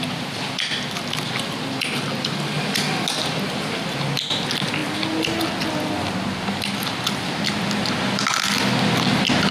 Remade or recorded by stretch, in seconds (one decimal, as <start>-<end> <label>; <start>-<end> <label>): 0.0-9.5 recorded